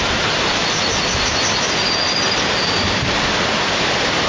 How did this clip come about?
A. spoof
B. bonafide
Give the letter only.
B